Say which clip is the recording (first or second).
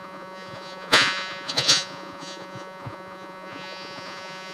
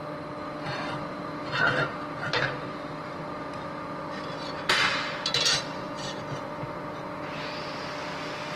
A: second